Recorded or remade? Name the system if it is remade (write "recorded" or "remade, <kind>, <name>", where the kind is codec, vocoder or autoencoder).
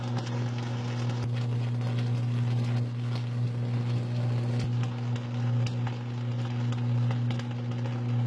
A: recorded